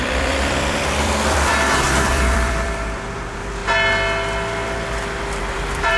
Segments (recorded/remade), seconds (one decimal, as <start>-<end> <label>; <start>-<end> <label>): 0.0-3.6 remade; 3.6-5.4 recorded; 5.4-6.0 remade